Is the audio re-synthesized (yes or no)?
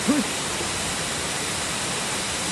no